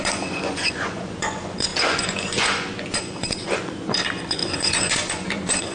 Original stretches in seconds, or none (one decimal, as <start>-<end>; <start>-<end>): none